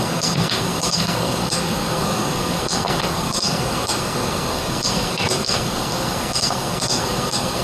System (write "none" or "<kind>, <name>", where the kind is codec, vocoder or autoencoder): codec, SNAC